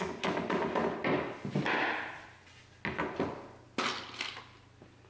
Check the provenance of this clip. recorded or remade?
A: recorded